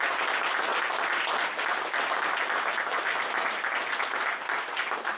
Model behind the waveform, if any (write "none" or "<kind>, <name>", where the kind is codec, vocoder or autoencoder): none